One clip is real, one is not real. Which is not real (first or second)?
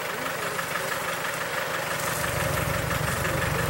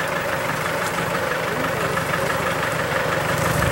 second